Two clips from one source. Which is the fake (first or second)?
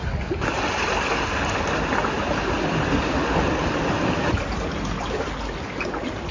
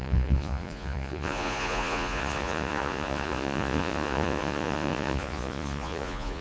second